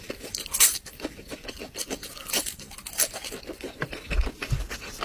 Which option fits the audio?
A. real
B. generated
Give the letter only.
A